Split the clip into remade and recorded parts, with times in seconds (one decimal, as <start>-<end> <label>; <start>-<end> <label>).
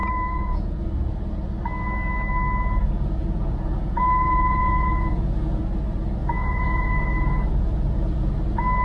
0.0-0.9 remade; 0.9-2.8 recorded; 2.8-5.6 remade; 5.6-6.2 recorded; 6.2-8.3 remade; 8.3-8.8 recorded